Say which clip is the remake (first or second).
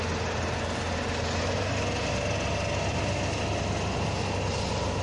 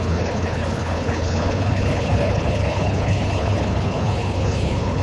second